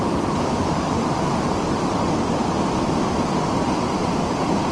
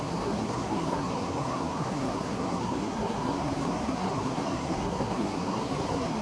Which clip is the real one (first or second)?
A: first